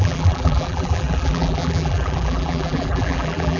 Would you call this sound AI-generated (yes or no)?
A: yes